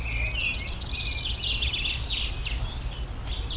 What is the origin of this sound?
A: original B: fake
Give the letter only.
A